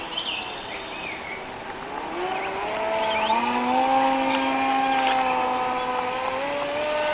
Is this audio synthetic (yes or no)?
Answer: no